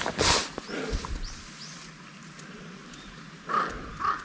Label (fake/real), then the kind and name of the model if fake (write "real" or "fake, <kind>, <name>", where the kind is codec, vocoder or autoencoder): real